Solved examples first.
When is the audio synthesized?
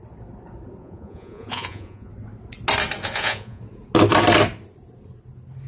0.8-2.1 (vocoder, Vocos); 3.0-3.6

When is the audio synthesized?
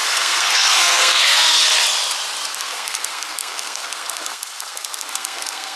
0.0-1.6 (codec, SNAC); 2.6-5.8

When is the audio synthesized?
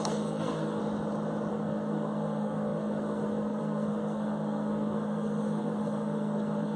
0.0-0.8 (codec, SNAC); 1.5-6.8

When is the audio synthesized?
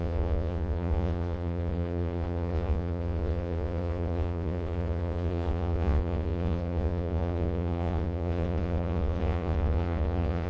0.0-10.5 (vocoder, Vocos)